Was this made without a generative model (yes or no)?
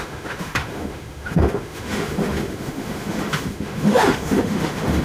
no